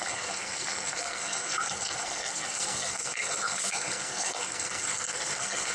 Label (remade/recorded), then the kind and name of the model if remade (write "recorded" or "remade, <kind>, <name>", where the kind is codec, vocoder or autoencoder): remade, codec, SNAC